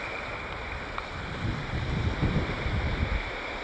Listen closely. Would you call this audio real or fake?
real